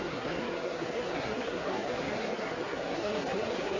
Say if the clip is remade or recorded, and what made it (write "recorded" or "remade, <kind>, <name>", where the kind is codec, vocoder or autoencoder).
remade, codec, SNAC